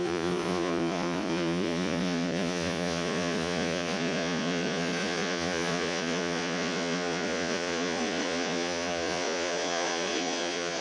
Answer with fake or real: fake